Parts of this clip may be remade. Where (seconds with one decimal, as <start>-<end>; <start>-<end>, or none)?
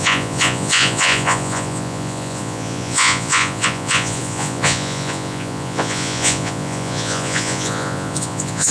0.0-8.7